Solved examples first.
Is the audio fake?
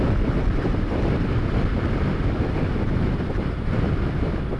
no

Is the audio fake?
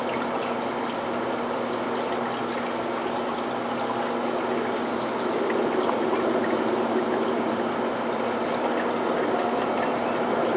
no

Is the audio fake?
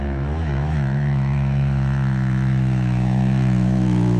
yes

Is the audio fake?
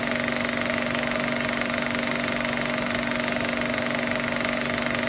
no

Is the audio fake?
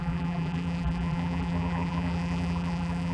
yes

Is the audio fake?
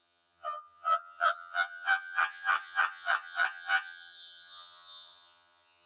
yes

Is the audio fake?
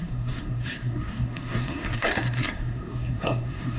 yes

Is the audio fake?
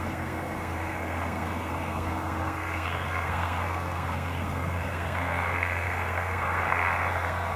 yes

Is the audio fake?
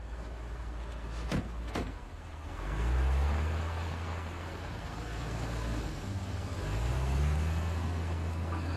yes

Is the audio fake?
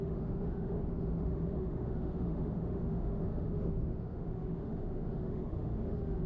yes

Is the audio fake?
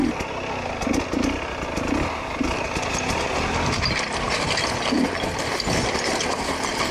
no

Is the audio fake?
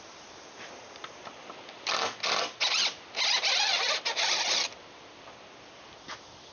no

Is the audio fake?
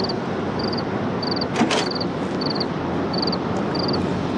no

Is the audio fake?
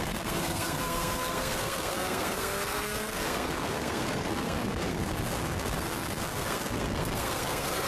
yes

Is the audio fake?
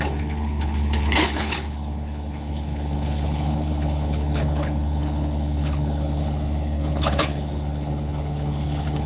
yes